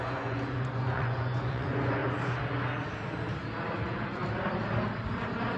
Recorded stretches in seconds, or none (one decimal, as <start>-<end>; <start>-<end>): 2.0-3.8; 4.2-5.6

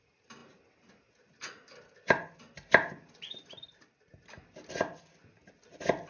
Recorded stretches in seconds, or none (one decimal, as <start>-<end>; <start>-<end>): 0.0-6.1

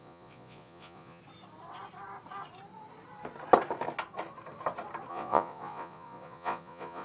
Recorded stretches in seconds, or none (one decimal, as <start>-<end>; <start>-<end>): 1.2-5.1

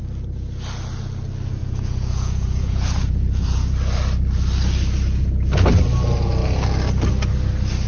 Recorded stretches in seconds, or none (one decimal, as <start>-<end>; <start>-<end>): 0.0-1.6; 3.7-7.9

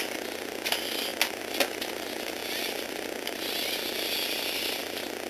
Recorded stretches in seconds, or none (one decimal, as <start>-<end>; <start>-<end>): 0.0-5.3

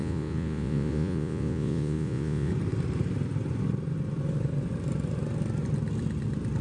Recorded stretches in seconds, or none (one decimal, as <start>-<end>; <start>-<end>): 2.5-6.6

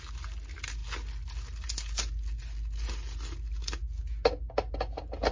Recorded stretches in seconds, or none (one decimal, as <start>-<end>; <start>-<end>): 0.0-5.3